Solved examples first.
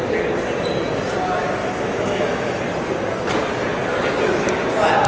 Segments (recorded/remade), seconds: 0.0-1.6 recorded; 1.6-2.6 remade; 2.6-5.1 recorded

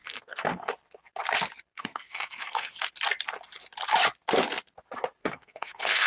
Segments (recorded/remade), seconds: 0.0-0.7 remade; 0.7-1.7 recorded; 1.7-2.8 remade; 2.8-5.2 recorded; 5.2-6.1 remade

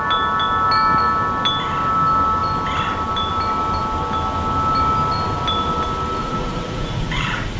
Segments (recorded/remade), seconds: 0.0-6.2 recorded; 6.2-7.6 remade

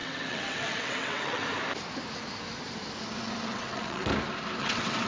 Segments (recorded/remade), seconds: 0.0-1.4 remade; 1.4-3.5 recorded; 3.5-4.1 remade; 4.1-4.6 recorded; 4.6-5.1 remade

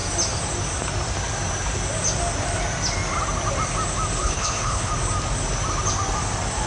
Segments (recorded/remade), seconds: 0.0-4.2 recorded; 4.2-4.9 remade; 4.9-6.7 recorded

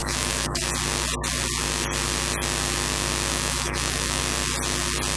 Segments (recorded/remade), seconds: 0.0-0.6 remade; 0.6-3.3 recorded; 3.3-4.2 remade; 4.2-5.2 recorded

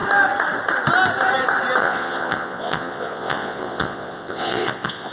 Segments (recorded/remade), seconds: 0.0-1.8 recorded; 1.8-5.1 remade